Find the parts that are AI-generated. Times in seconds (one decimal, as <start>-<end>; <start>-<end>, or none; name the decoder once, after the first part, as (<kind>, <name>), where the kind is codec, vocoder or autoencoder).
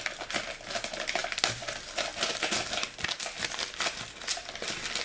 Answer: none